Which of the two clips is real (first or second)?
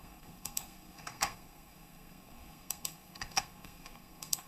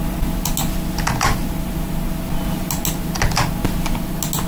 second